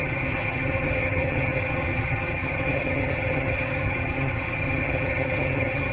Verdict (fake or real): fake